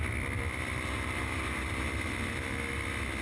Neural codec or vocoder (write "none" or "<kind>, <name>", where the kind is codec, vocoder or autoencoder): none